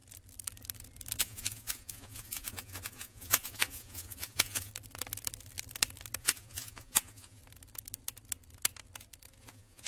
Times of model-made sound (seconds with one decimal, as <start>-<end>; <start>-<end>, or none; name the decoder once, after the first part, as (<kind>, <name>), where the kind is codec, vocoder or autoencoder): 1.2-4.7 (vocoder, Vocos); 6.2-7.4; 9.4-9.9